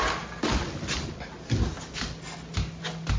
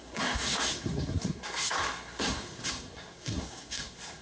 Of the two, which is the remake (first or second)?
second